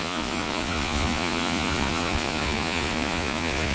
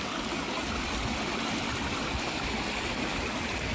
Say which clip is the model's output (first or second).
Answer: first